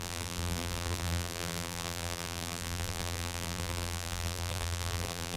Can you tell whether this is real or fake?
fake